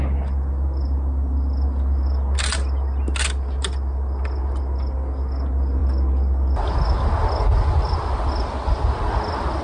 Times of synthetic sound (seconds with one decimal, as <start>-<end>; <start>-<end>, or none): none